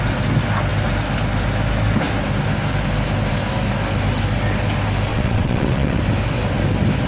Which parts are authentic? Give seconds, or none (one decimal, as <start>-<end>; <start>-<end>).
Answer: 0.0-5.1; 6.0-7.1